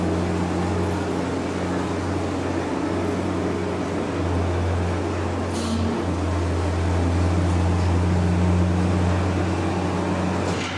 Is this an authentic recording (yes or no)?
yes